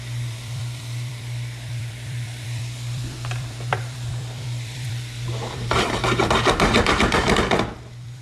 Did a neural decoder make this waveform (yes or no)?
yes